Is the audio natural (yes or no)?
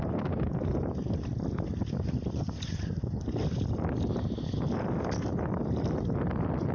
yes